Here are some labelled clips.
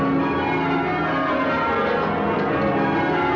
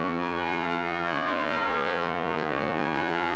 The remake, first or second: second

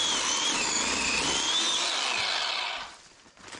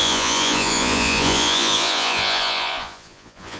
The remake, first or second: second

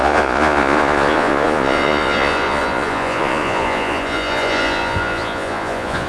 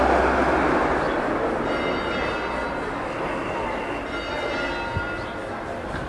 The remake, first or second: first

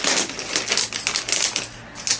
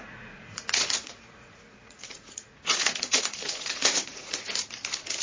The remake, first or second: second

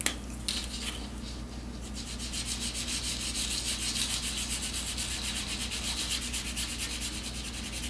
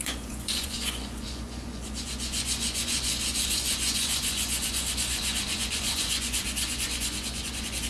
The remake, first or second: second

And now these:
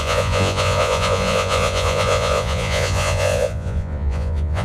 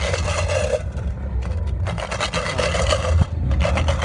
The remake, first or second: first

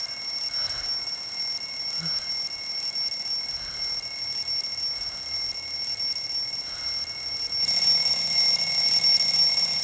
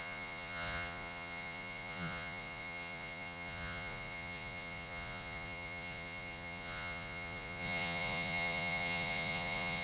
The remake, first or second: second